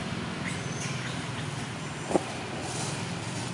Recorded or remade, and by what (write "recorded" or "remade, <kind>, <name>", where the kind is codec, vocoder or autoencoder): recorded